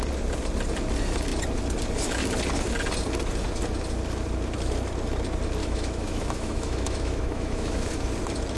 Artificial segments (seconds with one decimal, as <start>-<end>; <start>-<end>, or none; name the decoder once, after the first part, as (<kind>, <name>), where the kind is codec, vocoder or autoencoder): 5.6-7.9 (autoencoder, DAC-VAE)

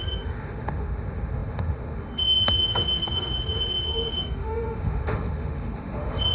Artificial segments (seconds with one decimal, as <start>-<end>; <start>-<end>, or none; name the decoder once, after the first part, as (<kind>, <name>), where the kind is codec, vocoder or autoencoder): 0.0-6.3 (autoencoder, DAC-VAE)

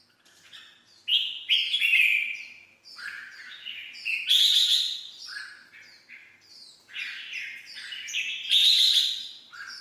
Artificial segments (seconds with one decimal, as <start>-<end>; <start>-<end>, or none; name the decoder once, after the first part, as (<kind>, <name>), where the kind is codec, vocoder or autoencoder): none

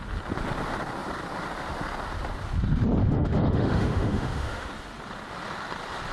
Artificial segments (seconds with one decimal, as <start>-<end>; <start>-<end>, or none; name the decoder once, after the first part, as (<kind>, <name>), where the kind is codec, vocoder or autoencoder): 3.0-4.7 (autoencoder, DAC-VAE)